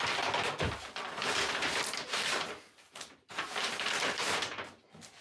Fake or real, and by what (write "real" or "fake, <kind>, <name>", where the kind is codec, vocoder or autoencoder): fake, vocoder, BigVGAN v2